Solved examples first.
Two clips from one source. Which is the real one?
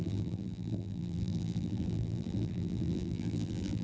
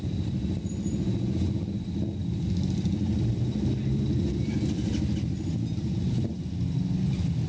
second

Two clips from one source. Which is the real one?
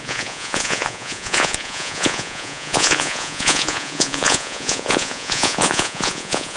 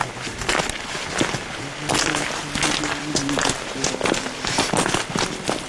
second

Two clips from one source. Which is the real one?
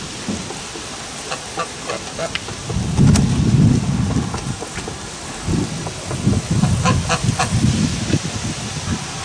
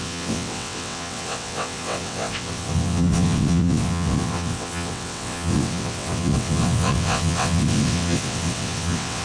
first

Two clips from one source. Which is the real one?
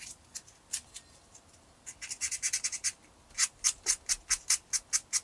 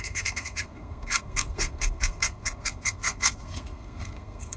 first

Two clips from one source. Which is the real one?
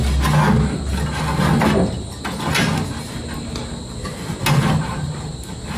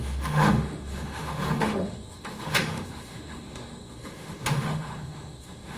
first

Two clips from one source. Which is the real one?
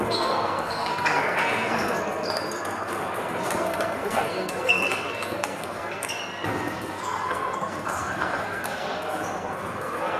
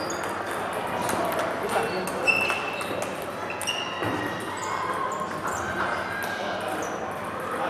second